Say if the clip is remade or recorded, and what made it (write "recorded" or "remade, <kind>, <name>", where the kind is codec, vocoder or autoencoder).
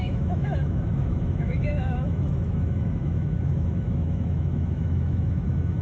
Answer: remade, autoencoder, DAC-VAE